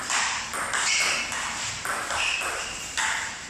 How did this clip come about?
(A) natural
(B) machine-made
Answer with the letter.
A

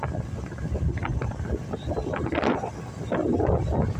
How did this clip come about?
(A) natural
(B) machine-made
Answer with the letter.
A